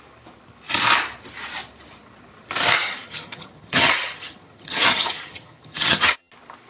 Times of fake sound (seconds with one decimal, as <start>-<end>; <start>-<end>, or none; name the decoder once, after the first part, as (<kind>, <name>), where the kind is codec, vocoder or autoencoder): 2.8-6.3 (vocoder, HiFi-GAN)